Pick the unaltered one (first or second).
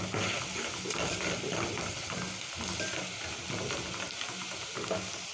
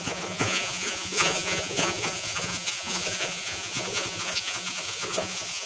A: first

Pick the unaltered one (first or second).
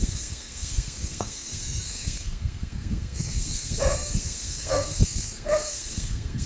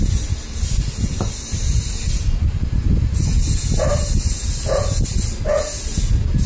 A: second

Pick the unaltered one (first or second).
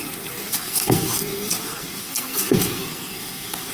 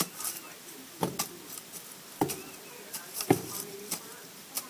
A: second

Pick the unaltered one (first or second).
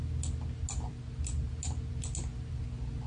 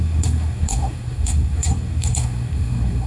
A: first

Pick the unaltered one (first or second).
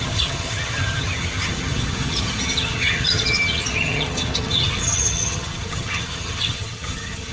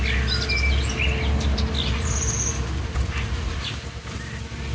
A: second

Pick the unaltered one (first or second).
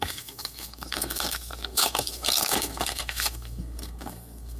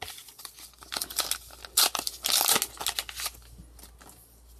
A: second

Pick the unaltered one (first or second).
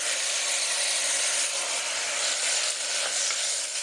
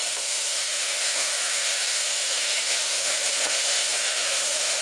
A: first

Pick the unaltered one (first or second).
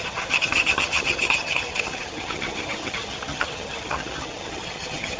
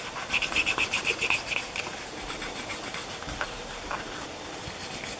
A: second